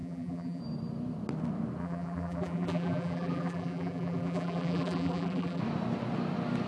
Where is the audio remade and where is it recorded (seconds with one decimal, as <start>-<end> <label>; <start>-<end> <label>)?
0.0-0.6 remade; 0.6-1.8 recorded; 1.8-5.6 remade; 5.6-6.7 recorded